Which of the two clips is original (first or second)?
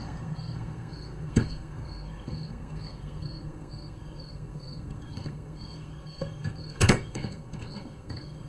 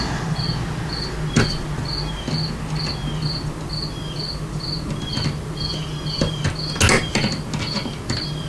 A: second